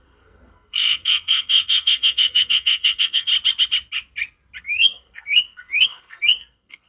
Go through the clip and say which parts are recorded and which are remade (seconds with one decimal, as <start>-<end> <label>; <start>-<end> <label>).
0.0-3.3 remade; 3.3-4.6 recorded; 4.6-6.9 remade